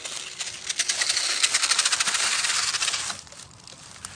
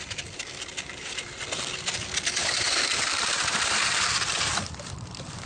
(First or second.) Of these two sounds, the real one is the first